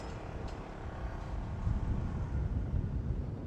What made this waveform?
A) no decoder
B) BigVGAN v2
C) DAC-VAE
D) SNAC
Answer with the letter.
A